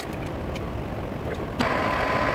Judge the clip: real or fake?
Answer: real